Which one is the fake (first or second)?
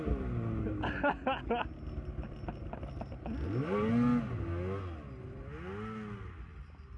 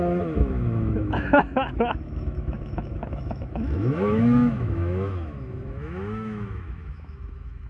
second